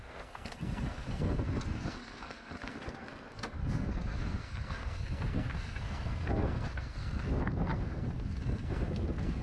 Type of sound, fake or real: fake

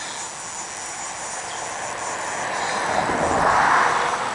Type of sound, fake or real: real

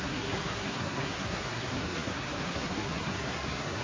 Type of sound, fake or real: fake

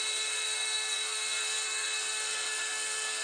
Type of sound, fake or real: fake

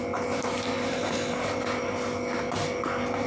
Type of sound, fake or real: real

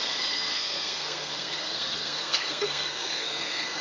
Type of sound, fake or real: fake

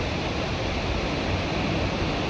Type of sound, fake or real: real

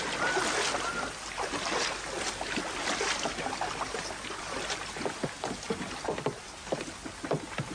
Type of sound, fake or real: real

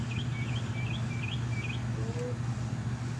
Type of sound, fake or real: real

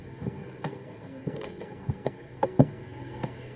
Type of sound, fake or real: fake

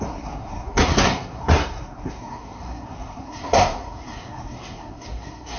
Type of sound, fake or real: fake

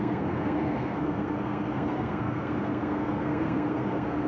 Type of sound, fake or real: fake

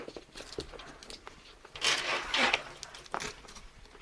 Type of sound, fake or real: real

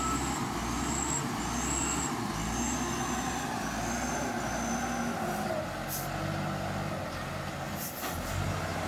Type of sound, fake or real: real